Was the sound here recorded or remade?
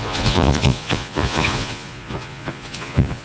remade